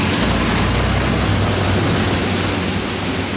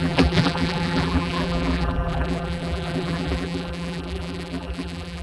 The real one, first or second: first